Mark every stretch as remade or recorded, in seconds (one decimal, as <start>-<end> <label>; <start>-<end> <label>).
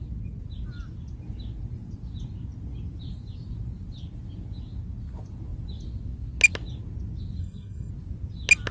0.0-7.4 recorded; 7.4-7.9 remade; 7.9-8.7 recorded